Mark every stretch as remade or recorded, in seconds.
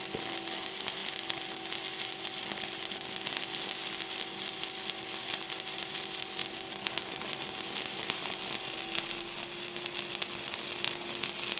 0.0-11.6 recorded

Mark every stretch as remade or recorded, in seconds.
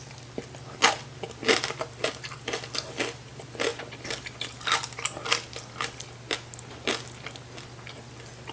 0.0-1.4 recorded; 1.4-2.1 remade; 2.1-3.7 recorded; 3.7-6.3 remade; 6.3-8.5 recorded